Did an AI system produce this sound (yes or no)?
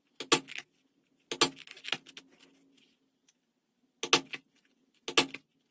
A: no